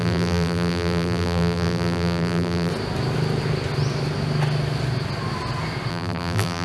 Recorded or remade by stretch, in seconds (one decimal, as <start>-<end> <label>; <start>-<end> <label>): 0.0-2.7 remade; 2.7-5.9 recorded; 5.9-6.6 remade